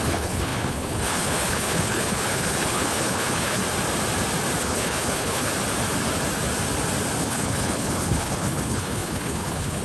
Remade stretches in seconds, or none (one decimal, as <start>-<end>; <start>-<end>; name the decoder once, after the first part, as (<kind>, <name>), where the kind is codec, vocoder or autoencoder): 0.0-3.6 (codec, HILCodec); 4.6-5.5; 7.2-9.8

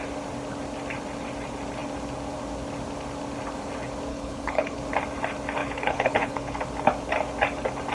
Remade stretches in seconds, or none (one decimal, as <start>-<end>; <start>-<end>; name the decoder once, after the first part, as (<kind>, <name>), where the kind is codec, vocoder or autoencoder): 4.1-4.8 (codec, HILCodec); 5.6-6.6

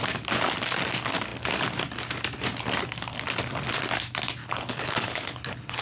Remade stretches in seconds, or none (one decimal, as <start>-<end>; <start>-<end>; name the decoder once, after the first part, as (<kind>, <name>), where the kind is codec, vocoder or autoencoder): 4.4-5.8 (codec, HILCodec)

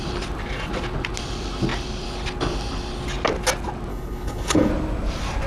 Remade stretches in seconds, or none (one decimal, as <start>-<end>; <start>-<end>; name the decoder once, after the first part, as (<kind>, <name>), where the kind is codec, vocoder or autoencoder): 3.9-4.7 (codec, HILCodec)

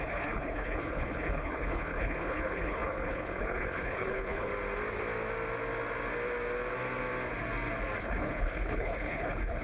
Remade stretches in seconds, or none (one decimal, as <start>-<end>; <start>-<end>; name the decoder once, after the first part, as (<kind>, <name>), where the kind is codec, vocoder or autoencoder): 0.0-4.5 (codec, HILCodec); 8.0-9.6